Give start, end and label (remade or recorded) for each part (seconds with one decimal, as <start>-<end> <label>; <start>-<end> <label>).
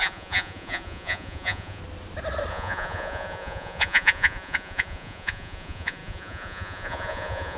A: 0.0-1.8 remade; 1.8-2.5 recorded; 2.5-7.6 remade